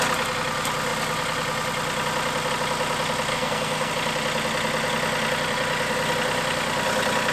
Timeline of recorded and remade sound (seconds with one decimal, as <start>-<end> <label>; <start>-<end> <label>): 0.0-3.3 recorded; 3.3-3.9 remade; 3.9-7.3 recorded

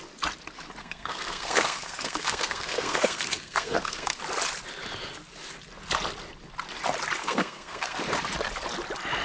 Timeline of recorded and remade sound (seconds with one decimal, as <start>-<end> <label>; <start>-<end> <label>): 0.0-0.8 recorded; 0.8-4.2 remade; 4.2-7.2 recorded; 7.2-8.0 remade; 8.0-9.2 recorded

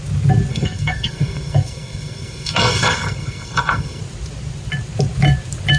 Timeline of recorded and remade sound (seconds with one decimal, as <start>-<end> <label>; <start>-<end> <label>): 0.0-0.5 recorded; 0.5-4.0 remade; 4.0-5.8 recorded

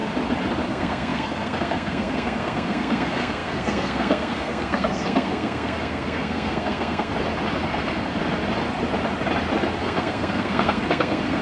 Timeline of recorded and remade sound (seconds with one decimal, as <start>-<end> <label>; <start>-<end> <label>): 0.0-0.7 recorded; 0.7-7.1 remade; 7.1-9.8 recorded; 9.8-11.4 remade